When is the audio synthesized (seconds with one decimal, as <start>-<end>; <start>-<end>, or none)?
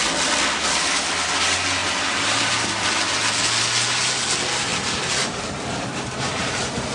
1.8-2.5; 4.7-6.9